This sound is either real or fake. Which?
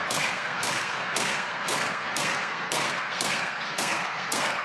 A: fake